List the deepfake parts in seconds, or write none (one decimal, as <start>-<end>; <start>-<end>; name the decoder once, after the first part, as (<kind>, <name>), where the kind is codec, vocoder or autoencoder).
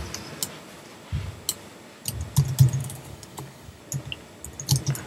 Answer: 2.8-3.8 (codec, DAC)